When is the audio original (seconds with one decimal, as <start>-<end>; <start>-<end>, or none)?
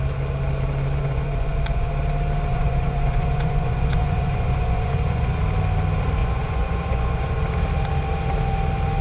0.0-1.0; 1.9-2.5; 5.4-6.2; 7.4-9.0